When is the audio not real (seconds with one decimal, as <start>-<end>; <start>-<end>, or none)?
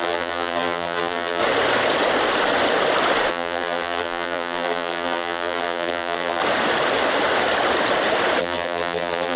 0.0-1.4; 3.3-6.4; 8.4-9.4